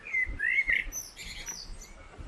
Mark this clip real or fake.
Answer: real